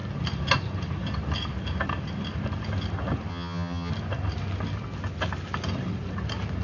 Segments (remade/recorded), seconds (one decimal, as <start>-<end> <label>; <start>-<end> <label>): 0.0-3.3 recorded; 3.3-3.9 remade; 3.9-6.6 recorded